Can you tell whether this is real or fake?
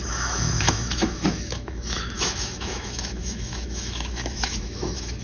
fake